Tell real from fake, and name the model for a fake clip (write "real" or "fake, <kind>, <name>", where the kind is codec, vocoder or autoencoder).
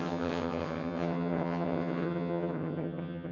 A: fake, vocoder, HiFi-GAN